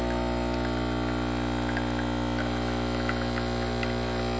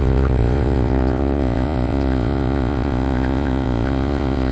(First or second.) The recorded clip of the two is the first